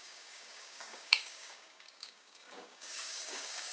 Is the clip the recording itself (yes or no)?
no